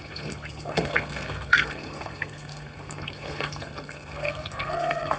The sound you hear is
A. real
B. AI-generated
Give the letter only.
B